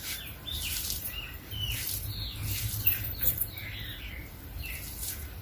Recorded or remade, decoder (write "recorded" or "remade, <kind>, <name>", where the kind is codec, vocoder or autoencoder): remade, vocoder, BigVGAN v2